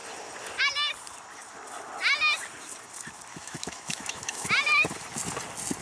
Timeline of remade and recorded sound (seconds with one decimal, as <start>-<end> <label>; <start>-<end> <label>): 0.0-3.3 recorded; 3.3-4.5 remade; 4.5-5.8 recorded